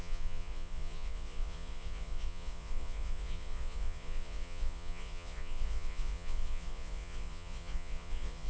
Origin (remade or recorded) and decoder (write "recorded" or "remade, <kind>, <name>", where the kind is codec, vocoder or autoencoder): remade, vocoder, Vocos